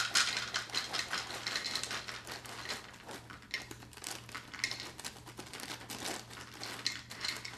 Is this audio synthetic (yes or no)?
no